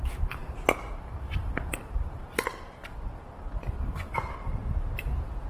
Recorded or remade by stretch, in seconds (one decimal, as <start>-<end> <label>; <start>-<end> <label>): 0.0-2.8 remade; 2.8-3.9 recorded; 3.9-4.6 remade; 4.6-5.5 recorded